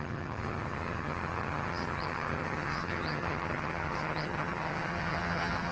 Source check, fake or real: fake